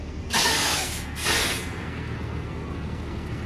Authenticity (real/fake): fake